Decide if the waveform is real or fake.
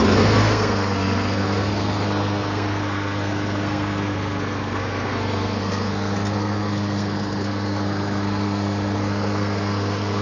fake